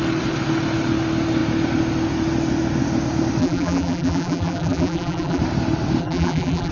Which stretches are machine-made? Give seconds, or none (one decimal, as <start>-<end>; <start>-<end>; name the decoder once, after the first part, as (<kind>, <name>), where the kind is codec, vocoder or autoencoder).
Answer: 3.4-5.4 (vocoder, BigVGAN v2); 6.0-6.7